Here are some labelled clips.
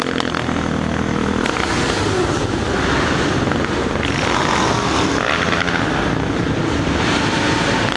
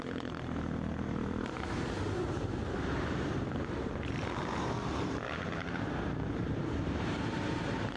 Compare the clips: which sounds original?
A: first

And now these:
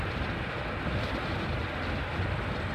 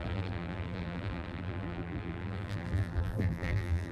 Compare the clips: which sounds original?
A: first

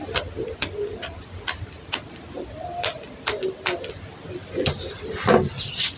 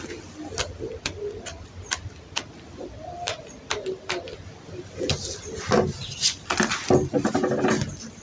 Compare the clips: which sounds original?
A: first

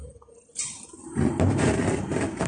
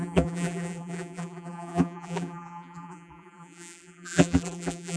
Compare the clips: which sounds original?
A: first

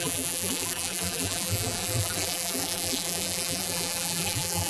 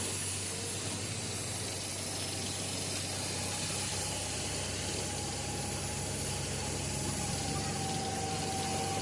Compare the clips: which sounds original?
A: second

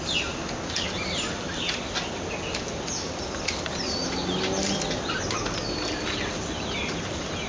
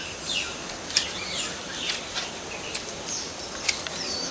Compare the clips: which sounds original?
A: first